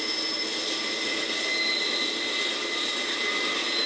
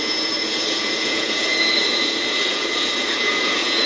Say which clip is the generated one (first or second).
second